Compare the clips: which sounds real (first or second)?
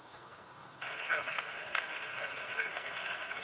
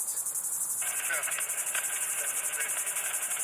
second